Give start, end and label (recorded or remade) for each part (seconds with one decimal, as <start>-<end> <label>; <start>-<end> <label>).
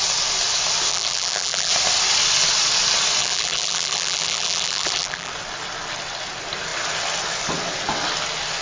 0.0-0.9 recorded; 0.9-1.7 remade; 1.7-3.2 recorded; 3.2-5.3 remade; 5.3-8.6 recorded